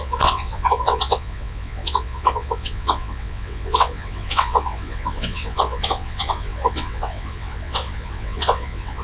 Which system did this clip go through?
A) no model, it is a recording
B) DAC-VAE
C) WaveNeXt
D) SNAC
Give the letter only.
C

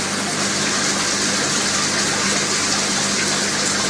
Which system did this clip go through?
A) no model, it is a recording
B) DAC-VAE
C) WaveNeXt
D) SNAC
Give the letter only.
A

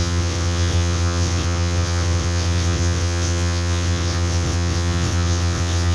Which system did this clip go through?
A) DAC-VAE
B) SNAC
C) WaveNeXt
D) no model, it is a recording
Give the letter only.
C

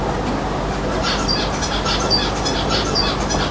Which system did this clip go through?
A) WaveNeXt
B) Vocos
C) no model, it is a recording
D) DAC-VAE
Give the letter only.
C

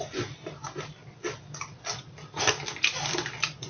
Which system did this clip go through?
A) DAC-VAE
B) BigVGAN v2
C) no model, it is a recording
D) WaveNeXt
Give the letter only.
C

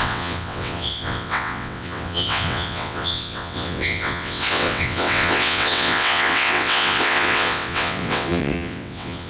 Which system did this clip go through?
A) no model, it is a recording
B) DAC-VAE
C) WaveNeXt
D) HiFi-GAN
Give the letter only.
C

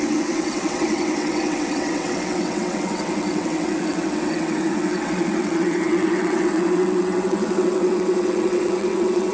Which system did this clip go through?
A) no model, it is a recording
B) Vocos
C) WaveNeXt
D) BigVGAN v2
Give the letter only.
C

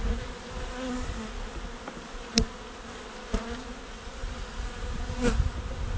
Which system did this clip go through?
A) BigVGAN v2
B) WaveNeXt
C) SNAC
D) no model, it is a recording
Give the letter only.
D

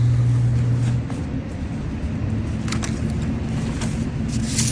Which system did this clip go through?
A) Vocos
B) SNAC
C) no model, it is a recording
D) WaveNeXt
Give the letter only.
C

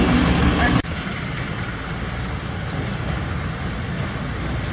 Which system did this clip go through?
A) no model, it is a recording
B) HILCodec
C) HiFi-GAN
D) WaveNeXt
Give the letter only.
A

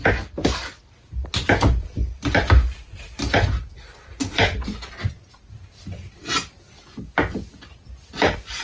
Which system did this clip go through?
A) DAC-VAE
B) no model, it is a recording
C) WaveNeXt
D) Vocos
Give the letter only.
B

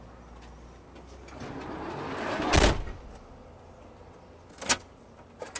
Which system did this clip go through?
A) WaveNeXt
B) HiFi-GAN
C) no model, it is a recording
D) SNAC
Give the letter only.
C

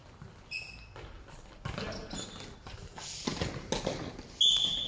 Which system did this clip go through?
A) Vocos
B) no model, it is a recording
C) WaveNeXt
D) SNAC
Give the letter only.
B